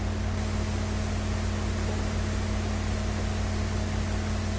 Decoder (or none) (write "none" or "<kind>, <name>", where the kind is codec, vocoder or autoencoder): none